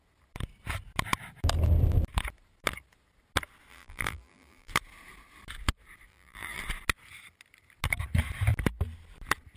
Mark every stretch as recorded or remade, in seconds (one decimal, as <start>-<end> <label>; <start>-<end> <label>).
0.0-3.7 recorded; 3.7-4.7 remade; 4.7-6.1 recorded; 6.1-6.6 remade; 6.6-9.6 recorded